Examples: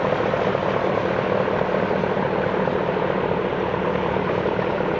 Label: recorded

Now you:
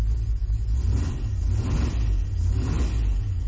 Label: recorded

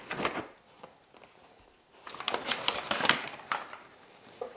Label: remade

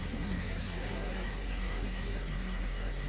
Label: remade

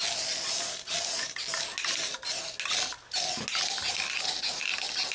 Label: recorded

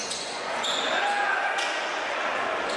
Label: remade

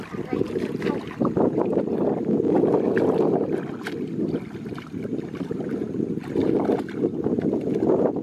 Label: recorded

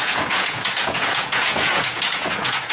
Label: remade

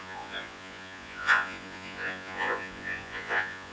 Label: remade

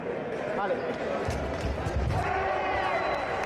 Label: recorded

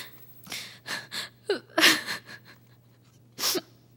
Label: recorded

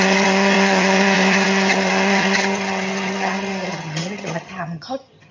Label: remade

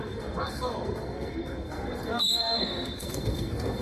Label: remade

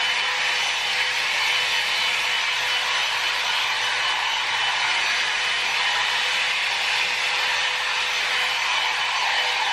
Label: recorded